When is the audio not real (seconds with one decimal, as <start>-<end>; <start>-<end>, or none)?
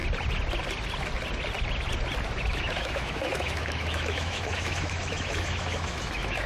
2.4-6.5